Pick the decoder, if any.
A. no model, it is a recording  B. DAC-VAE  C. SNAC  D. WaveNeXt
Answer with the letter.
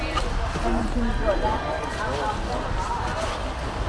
A